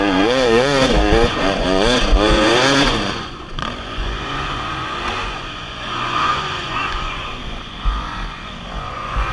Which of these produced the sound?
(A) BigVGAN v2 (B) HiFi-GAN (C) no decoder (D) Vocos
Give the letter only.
D